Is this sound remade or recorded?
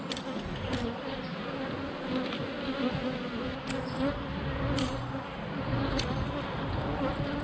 recorded